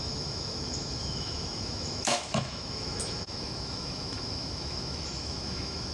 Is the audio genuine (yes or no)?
no